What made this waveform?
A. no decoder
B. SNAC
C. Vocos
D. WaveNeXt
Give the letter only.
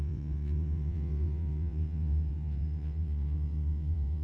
D